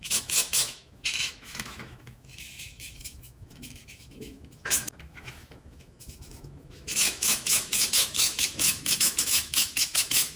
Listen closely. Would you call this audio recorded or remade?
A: remade